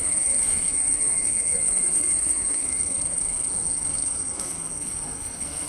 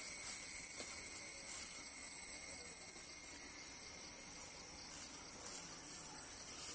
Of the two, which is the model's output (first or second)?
first